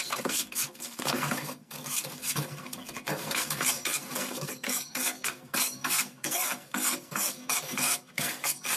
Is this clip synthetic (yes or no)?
yes